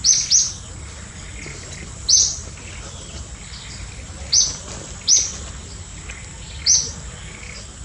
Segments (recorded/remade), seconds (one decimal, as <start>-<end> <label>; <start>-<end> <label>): 0.0-7.8 recorded